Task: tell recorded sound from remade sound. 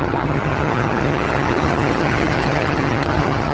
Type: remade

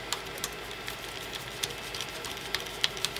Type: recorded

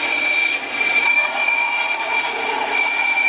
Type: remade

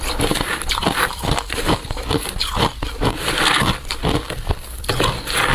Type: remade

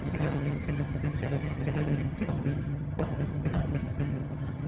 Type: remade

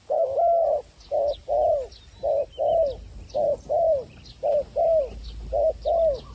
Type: recorded